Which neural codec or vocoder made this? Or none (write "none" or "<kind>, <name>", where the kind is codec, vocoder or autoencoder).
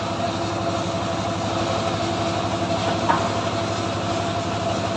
none